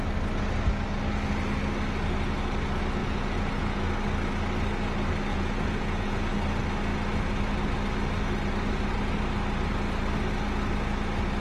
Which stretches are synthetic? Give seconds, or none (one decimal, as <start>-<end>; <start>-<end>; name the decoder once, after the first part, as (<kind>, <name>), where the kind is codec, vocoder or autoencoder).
3.0-3.8 (vocoder, Vocos); 5.3-6.3